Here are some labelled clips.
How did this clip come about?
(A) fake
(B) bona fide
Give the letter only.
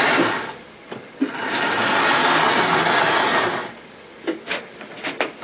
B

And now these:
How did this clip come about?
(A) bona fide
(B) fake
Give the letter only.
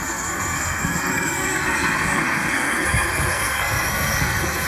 B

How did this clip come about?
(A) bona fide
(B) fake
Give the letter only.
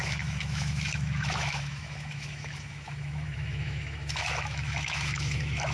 B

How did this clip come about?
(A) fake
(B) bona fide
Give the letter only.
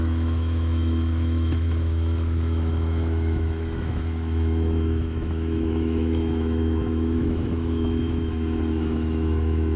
A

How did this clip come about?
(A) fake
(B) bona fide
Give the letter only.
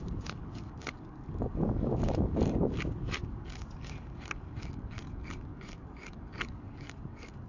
A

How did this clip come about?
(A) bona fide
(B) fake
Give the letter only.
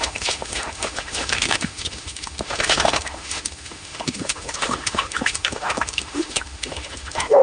B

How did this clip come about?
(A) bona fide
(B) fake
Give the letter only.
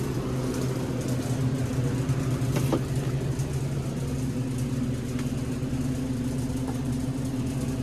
A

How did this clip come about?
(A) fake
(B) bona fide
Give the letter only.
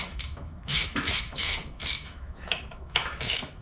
A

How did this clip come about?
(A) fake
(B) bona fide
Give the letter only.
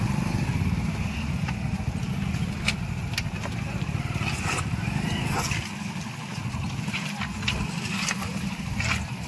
B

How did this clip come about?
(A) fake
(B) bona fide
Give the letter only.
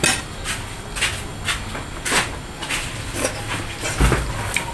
B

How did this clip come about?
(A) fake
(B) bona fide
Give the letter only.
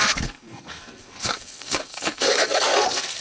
A